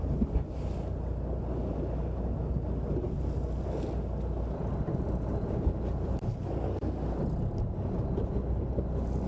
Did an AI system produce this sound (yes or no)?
no